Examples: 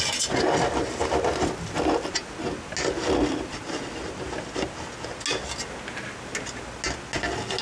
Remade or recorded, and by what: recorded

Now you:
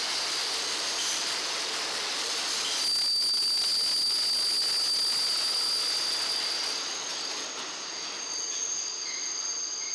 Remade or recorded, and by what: recorded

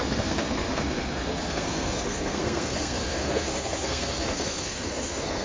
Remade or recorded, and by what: remade, codec, SNAC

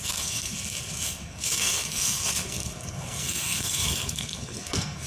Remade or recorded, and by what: remade, codec, SNAC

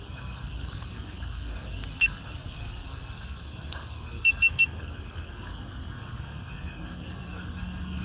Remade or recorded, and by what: remade, codec, SNAC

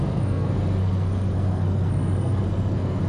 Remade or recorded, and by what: remade, codec, SNAC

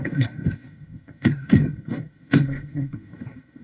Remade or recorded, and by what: remade, codec, SNAC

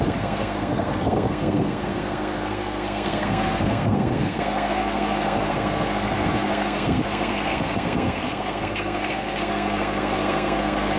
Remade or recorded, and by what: remade, codec, SNAC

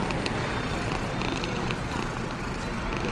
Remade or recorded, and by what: recorded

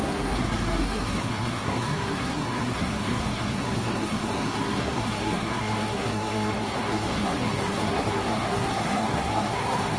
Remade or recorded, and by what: remade, codec, SNAC